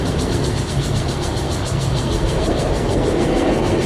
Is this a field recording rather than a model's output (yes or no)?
no